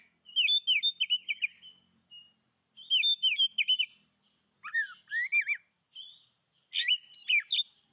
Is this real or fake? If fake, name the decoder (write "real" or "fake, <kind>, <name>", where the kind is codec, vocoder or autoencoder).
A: real